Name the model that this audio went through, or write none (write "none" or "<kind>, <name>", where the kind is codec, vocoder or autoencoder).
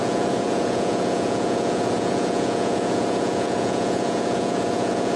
vocoder, Vocos